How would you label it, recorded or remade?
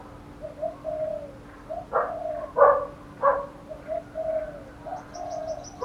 recorded